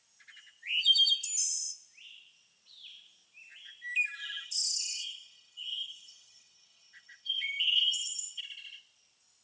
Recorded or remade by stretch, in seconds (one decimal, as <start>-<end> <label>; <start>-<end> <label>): 0.0-4.2 recorded; 4.2-8.4 remade; 8.4-9.4 recorded